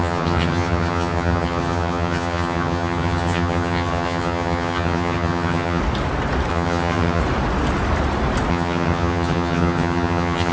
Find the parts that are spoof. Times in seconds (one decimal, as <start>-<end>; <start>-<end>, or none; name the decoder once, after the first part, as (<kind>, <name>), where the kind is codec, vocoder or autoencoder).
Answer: 0.0-5.8 (vocoder, HiFi-GAN); 6.5-7.2; 8.5-10.5